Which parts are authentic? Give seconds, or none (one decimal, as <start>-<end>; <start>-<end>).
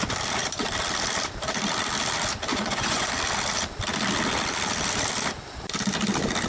0.0-2.5; 3.1-6.5